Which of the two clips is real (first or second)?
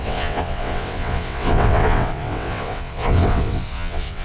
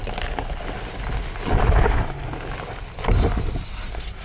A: second